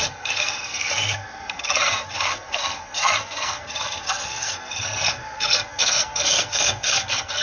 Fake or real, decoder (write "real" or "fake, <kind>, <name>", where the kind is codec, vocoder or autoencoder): fake, codec, SNAC